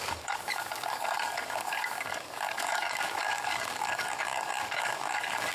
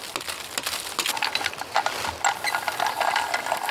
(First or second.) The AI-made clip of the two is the first